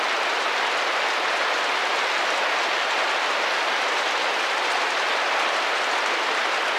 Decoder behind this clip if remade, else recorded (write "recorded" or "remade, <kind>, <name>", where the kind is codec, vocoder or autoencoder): recorded